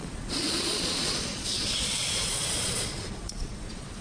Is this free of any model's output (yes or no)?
no